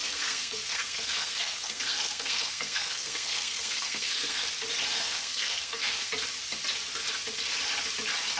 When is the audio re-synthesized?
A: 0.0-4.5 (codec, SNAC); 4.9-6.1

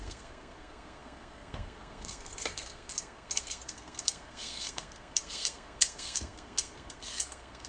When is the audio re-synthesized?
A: 0.0-7.7 (codec, SNAC)

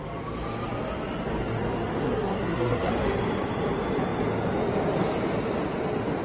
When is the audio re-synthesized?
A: 2.0-2.9 (codec, SNAC)